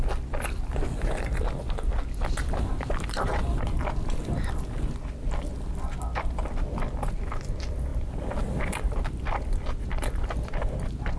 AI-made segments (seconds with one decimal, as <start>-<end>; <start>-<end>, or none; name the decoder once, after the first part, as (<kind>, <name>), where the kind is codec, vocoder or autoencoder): none